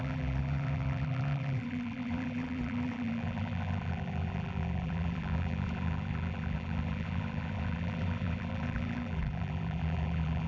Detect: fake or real fake